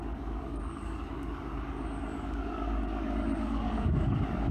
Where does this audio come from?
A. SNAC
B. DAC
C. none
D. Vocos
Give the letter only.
B